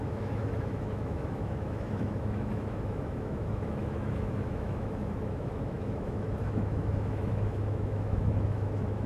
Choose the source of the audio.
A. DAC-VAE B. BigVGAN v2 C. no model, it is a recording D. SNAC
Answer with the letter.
A